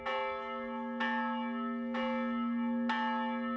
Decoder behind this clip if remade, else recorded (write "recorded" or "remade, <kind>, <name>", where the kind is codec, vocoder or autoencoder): recorded